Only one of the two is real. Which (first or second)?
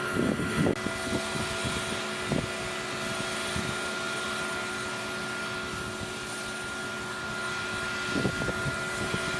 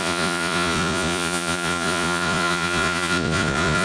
first